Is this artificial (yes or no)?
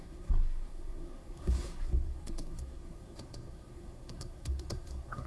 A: yes